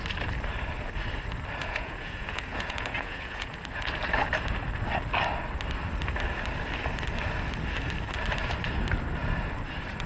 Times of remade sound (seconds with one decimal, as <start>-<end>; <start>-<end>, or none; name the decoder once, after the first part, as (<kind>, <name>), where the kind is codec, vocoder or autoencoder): 1.6-3.6 (vocoder, Vocos)